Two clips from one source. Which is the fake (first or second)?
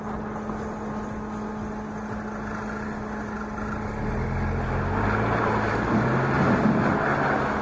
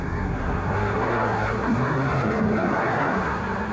second